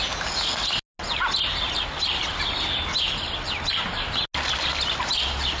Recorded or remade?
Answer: recorded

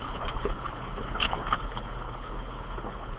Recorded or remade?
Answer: remade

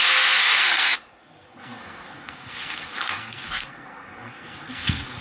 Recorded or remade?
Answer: remade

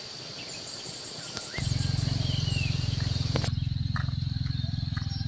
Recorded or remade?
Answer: recorded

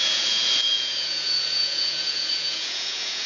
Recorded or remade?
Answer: remade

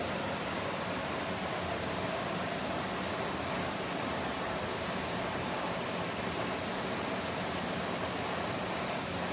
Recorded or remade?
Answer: recorded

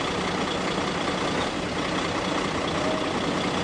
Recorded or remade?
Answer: recorded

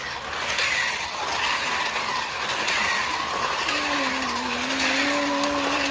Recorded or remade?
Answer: recorded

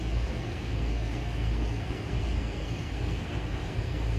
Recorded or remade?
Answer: remade